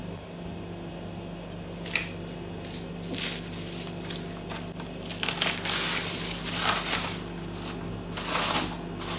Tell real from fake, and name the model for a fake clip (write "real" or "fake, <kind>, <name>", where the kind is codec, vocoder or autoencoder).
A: real